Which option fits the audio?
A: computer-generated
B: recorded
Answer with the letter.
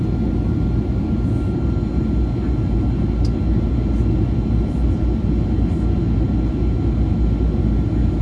B